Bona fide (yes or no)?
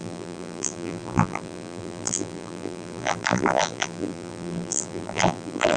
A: no